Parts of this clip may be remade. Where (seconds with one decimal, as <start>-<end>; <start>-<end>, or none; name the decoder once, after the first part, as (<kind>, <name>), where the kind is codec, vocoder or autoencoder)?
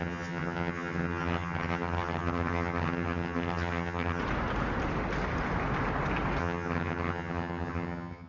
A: 0.0-4.2 (vocoder, HiFi-GAN); 6.4-8.3